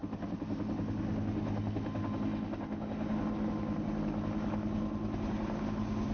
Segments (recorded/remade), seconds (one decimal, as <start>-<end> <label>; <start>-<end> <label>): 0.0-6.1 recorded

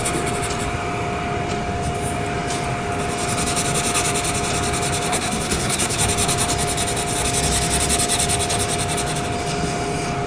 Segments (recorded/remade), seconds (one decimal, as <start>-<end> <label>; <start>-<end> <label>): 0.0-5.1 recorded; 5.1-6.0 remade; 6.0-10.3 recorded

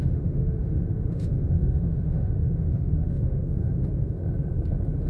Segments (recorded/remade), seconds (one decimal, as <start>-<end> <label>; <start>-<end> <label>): 0.0-4.2 remade; 4.2-5.1 recorded